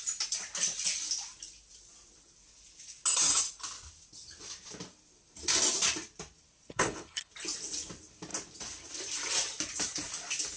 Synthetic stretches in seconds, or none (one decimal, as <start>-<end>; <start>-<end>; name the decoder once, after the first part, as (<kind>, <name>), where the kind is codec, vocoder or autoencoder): 6.7-7.3 (codec, HILCodec)